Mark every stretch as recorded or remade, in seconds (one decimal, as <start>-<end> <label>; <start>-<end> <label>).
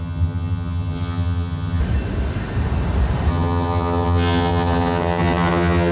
0.0-1.8 remade; 1.8-3.3 recorded; 3.3-5.9 remade